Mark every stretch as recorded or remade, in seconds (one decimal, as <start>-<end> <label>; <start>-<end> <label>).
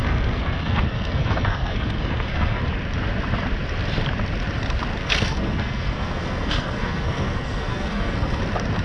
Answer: 0.0-2.6 remade; 2.6-5.0 recorded; 5.0-8.4 remade; 8.4-8.8 recorded